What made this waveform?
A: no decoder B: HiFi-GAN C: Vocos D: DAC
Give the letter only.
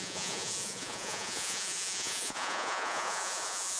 C